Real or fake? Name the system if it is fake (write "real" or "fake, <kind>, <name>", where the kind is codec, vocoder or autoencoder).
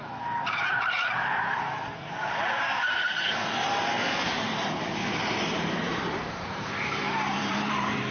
fake, vocoder, BigVGAN v2